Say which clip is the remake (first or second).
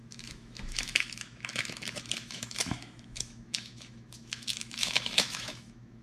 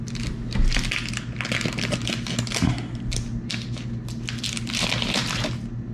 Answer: first